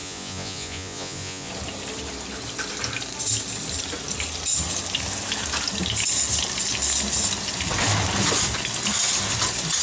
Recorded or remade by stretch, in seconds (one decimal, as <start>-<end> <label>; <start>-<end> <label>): 0.0-1.5 remade; 1.5-9.8 recorded